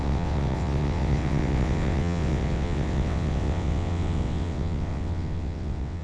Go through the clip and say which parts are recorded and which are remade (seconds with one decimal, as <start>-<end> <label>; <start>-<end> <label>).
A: 0.0-6.0 remade